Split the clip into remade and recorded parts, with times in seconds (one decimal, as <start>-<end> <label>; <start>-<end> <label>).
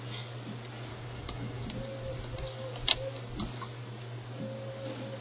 0.0-0.9 recorded; 0.9-1.7 remade; 1.7-5.2 recorded